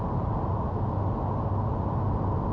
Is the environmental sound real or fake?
real